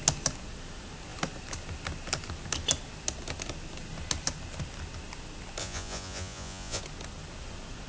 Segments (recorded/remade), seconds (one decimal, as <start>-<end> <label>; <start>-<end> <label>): 0.0-5.6 recorded; 5.6-6.8 remade; 6.8-7.9 recorded